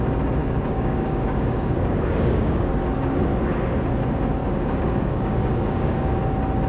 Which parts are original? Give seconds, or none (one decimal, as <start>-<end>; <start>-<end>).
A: 0.0-0.4; 2.7-4.4; 6.2-6.7

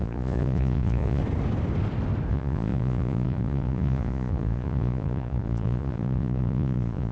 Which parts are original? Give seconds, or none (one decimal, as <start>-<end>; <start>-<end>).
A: 1.2-2.3